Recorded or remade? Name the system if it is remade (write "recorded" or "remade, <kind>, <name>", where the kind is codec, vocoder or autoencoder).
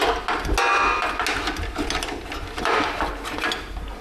recorded